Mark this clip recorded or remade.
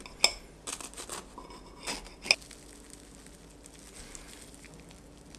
recorded